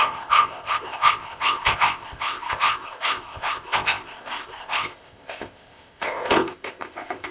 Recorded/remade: remade